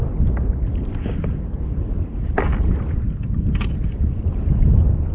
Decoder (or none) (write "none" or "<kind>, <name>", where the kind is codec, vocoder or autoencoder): none